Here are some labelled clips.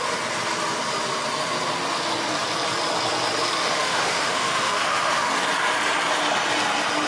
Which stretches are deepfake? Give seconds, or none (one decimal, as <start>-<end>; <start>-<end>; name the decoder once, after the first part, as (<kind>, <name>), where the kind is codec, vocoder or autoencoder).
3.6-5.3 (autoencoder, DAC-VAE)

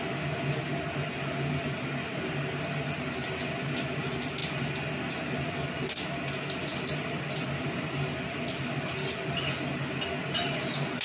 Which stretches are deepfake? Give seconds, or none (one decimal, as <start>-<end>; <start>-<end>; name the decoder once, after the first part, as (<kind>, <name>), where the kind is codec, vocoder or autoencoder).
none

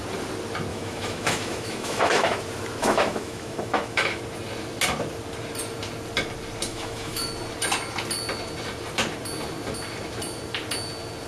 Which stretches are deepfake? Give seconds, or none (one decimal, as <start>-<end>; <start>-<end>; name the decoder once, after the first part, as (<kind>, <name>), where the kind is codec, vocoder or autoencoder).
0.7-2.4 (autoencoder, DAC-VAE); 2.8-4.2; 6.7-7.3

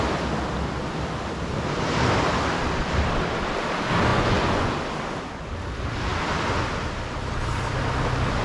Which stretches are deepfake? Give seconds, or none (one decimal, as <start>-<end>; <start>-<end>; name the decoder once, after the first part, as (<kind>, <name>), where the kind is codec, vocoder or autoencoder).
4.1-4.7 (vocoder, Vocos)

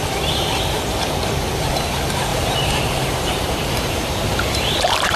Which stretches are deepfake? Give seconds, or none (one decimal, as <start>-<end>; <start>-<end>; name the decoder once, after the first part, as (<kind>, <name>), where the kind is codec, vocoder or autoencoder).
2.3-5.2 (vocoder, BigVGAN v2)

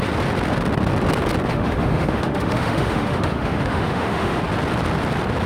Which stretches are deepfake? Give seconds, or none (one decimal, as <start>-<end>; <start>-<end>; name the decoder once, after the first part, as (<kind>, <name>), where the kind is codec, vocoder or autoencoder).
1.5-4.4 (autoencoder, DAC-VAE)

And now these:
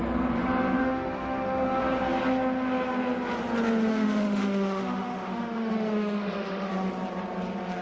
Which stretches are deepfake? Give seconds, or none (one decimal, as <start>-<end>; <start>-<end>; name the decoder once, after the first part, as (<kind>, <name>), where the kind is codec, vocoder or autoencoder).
0.8-1.8 (autoencoder, DAC-VAE); 3.9-6.7